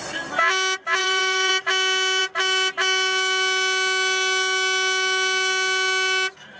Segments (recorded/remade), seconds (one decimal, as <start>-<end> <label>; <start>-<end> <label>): 0.0-1.0 recorded; 1.0-1.5 remade; 1.5-6.6 recorded